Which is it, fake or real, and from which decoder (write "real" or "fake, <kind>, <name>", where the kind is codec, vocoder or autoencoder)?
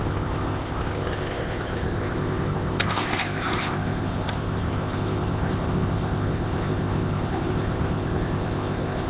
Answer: fake, codec, ZipCodec